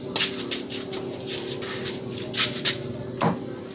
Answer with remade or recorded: recorded